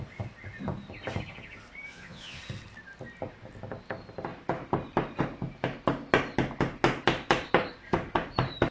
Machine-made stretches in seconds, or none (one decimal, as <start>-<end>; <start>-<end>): 1.9-2.4